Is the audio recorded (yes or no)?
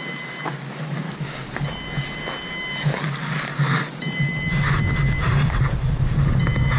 yes